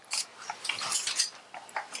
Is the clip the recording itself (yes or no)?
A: yes